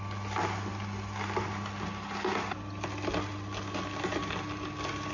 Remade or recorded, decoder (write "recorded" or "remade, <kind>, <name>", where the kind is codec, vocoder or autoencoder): recorded